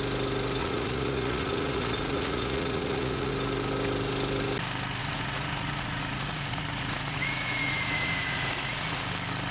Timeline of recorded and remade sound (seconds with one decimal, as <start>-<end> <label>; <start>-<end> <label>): 0.0-0.6 recorded; 0.6-3.3 remade; 3.3-5.0 recorded; 5.0-9.0 remade; 9.0-9.5 recorded